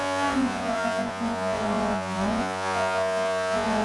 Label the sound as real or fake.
fake